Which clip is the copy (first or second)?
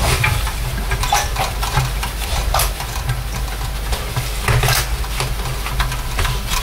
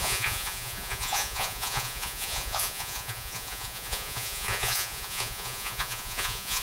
second